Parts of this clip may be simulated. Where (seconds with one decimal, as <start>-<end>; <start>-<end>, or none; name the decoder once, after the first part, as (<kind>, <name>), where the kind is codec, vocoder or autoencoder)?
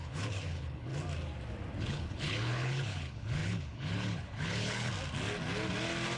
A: 0.0-0.9 (codec, HILCodec); 1.8-4.9